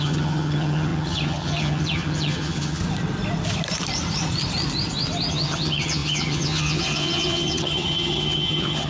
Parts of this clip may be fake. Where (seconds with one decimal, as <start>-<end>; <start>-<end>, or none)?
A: 0.0-2.8; 5.3-8.9